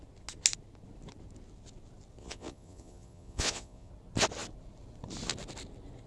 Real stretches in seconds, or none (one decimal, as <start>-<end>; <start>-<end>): 0.0-2.2; 3.9-6.1